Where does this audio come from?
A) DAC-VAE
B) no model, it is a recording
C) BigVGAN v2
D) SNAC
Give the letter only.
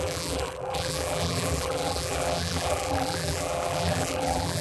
C